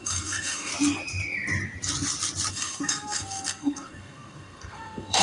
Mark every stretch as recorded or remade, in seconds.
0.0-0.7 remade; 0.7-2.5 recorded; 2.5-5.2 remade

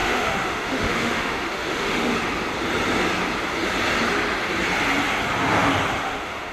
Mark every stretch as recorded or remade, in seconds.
0.0-2.1 remade; 2.1-6.0 recorded; 6.0-6.5 remade

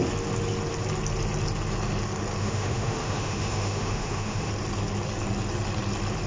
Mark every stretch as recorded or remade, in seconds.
0.0-2.4 recorded; 2.4-4.5 remade; 4.5-6.3 recorded

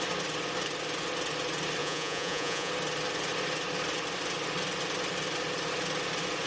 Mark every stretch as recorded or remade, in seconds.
0.0-1.8 recorded; 1.8-2.7 remade; 2.7-6.5 recorded

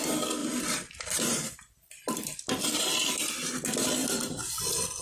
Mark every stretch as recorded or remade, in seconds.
0.0-0.4 recorded; 0.4-3.1 remade; 3.1-4.0 recorded; 4.0-4.5 remade; 4.5-5.0 recorded

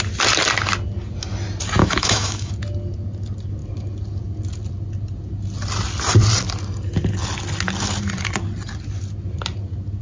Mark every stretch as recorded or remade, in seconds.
0.0-1.8 recorded; 1.8-2.5 remade; 2.5-10.0 recorded

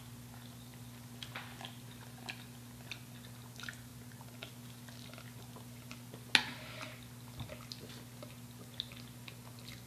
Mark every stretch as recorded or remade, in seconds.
0.0-9.9 recorded

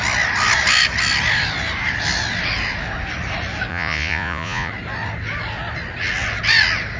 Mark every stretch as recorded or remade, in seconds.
0.0-3.7 recorded; 3.7-4.7 remade; 4.7-7.0 recorded